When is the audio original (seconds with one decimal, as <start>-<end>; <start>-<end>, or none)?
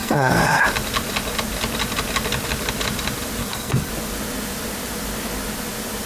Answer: 0.6-3.4; 3.9-6.1